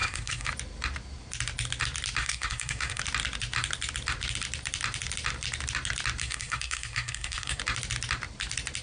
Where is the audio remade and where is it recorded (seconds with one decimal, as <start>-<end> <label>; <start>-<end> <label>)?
0.0-0.5 remade; 0.5-2.2 recorded; 2.2-3.0 remade; 3.0-6.2 recorded; 6.2-7.6 remade; 7.6-8.8 recorded